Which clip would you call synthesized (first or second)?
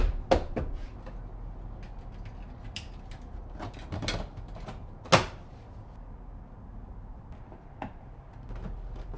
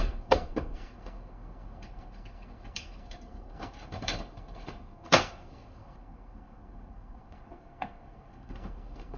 second